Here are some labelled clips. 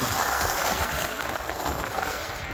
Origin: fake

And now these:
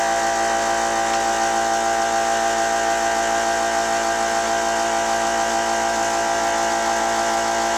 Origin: real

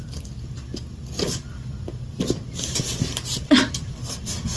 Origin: real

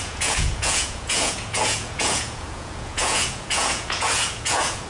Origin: fake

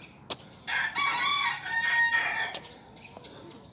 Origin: real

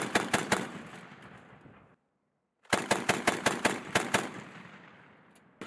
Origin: real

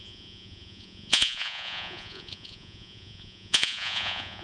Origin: fake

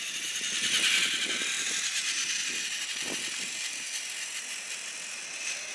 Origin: real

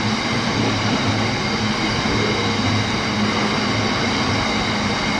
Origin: real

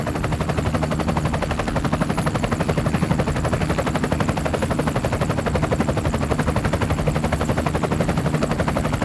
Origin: real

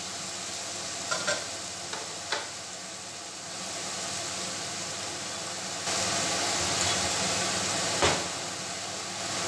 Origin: real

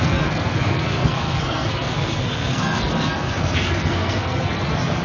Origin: fake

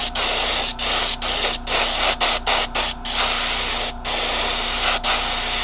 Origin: real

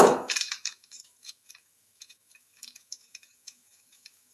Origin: fake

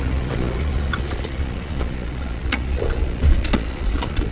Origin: fake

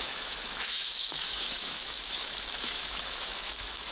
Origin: fake